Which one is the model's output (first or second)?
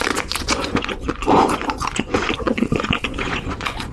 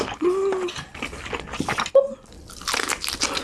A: first